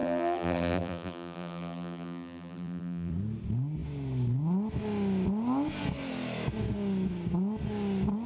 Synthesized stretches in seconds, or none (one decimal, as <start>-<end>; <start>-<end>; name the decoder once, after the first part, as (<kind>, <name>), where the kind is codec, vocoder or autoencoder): 0.0-3.1 (vocoder, BigVGAN v2)